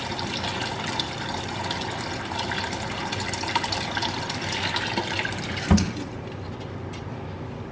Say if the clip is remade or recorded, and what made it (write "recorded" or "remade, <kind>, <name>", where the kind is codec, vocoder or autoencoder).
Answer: recorded